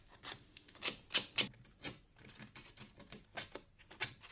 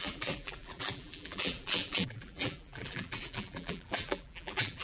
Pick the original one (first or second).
first